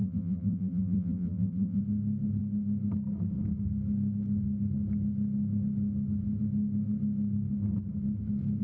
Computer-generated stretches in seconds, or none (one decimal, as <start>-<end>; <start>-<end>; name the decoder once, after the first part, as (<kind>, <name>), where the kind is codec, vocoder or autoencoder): 0.0-1.8 (vocoder, BigVGAN v2)